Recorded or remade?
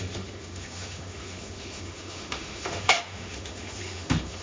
remade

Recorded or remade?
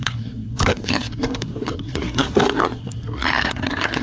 remade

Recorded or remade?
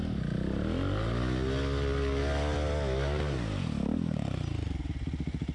recorded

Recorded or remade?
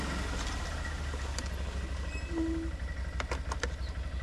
recorded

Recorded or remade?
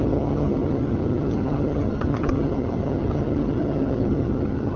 remade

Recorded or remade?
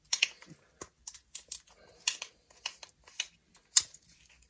recorded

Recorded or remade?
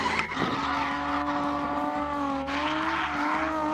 recorded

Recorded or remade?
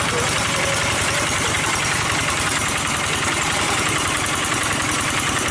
remade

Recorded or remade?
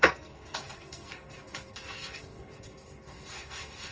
remade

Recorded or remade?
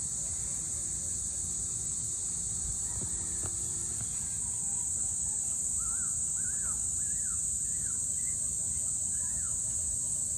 recorded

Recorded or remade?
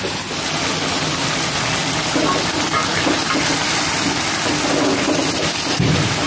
recorded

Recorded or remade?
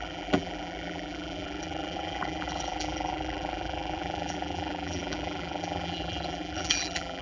remade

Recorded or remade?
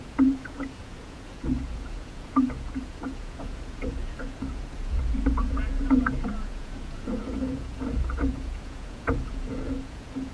remade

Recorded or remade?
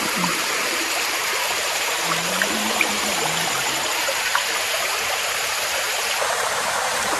remade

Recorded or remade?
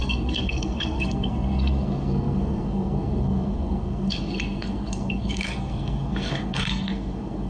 remade